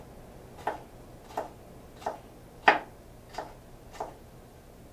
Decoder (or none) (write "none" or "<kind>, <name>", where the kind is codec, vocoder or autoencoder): none